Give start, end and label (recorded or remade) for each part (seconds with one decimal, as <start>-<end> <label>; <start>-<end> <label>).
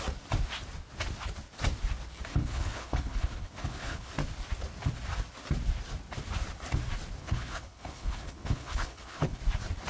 0.0-2.3 recorded; 2.3-4.1 remade; 4.1-7.2 recorded; 7.2-9.4 remade; 9.4-9.9 recorded